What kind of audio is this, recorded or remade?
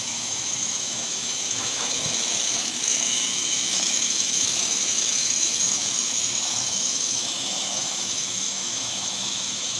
remade